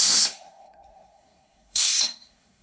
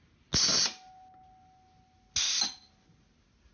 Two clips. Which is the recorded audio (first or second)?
second